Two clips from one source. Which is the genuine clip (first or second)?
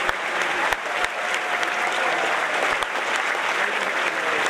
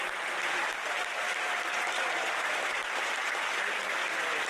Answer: first